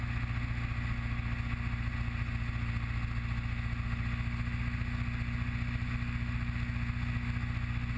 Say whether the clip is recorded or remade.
recorded